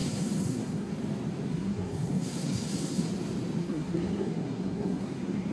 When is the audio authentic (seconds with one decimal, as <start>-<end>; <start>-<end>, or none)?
0.9-1.5; 3.1-3.6

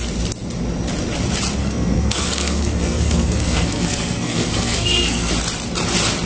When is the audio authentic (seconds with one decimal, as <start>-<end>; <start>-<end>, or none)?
0.0-1.6; 5.3-6.2

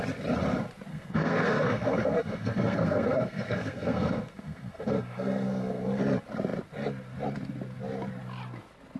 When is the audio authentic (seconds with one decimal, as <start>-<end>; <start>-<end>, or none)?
0.0-0.9; 6.0-9.0

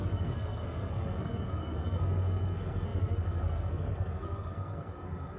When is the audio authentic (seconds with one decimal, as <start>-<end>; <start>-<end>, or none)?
none

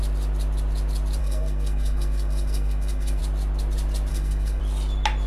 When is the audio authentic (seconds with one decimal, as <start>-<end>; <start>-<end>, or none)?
0.0-1.2; 3.2-4.1; 4.6-5.3

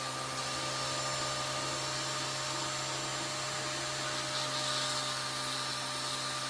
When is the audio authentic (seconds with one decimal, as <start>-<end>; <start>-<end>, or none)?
0.0-6.5

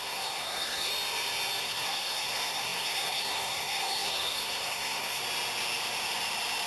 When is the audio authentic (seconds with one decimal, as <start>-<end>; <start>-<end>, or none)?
0.9-1.6; 5.2-6.7

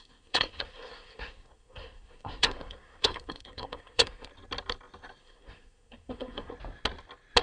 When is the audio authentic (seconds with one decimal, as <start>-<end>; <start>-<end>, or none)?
4.3-5.2; 6.5-7.4